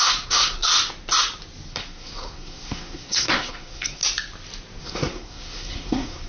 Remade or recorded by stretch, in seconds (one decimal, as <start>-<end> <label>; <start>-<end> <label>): 0.0-0.7 remade; 0.7-1.7 recorded; 1.7-4.0 remade; 4.0-4.8 recorded; 4.8-6.3 remade